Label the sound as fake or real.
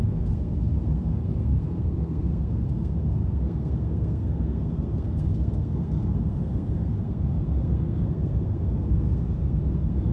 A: fake